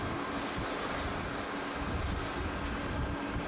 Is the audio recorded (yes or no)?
yes